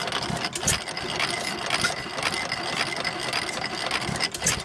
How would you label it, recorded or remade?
recorded